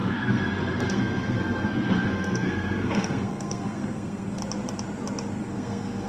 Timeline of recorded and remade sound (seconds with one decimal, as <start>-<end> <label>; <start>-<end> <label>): 0.0-4.4 remade; 4.4-5.4 recorded; 5.4-6.1 remade